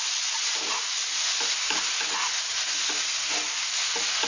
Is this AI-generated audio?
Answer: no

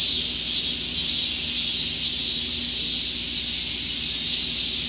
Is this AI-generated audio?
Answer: no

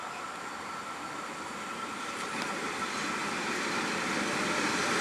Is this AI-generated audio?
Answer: no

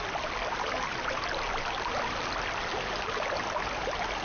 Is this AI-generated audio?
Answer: no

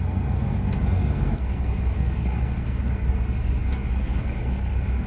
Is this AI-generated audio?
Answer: yes